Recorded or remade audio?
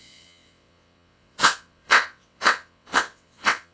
remade